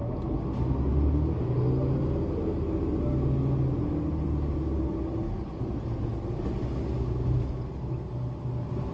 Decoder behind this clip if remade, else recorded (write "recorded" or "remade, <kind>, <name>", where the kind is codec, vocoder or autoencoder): recorded